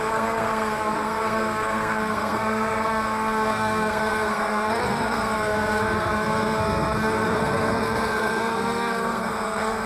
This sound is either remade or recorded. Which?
remade